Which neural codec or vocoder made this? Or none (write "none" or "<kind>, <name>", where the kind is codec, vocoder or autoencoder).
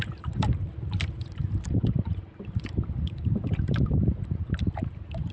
vocoder, BigVGAN v2